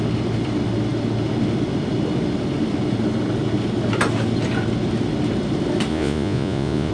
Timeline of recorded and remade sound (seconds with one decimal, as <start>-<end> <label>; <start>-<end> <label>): 0.0-5.9 recorded; 5.9-6.9 remade